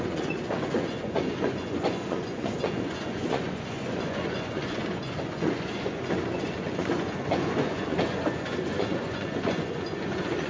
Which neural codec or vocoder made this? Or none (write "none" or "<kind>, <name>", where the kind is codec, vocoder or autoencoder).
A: vocoder, Vocos